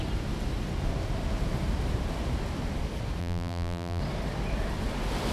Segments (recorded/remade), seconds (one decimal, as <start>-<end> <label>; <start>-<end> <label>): 0.0-3.2 recorded; 3.2-4.0 remade; 4.0-5.3 recorded